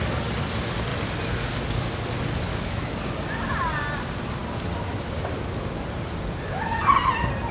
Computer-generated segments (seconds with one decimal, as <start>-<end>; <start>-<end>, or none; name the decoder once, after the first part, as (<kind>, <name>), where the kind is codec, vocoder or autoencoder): 2.5-3.0 (codec, DAC)

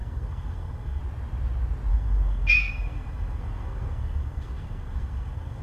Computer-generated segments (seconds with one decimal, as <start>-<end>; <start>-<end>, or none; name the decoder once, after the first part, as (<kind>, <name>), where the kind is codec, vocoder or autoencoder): 0.0-1.0 (codec, SNAC); 1.9-5.6

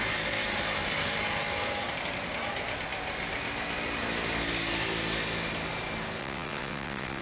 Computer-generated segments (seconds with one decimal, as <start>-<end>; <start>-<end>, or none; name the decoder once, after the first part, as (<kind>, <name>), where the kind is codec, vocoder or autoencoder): 6.2-7.2 (vocoder, WaveNeXt)